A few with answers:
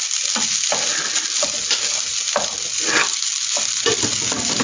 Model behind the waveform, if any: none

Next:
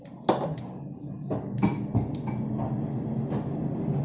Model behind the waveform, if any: none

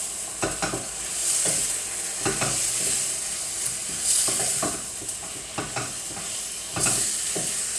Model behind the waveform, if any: none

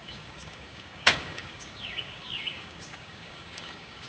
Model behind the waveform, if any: codec, DAC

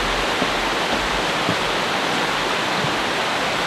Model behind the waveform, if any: none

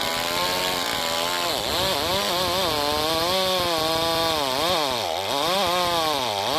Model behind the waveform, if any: none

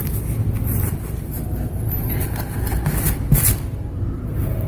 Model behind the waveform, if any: none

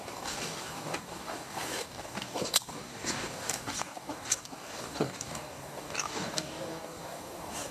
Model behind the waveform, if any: codec, DAC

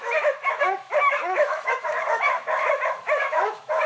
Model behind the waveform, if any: autoencoder, DAC-VAE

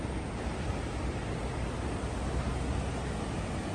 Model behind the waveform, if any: none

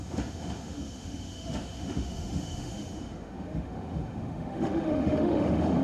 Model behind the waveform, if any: autoencoder, DAC-VAE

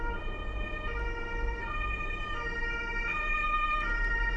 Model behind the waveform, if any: none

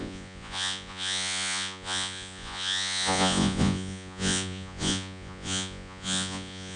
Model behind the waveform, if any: vocoder, Vocos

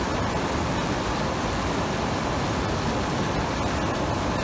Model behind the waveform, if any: none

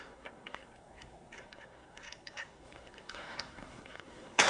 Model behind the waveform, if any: codec, SNAC